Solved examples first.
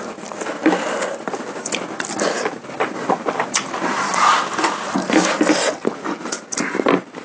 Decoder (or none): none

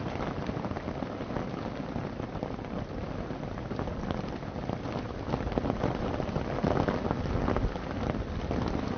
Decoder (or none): none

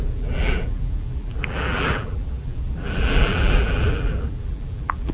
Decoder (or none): vocoder, BigVGAN v2